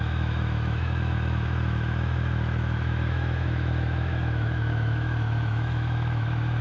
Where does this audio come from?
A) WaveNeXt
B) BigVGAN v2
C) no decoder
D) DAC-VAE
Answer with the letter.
D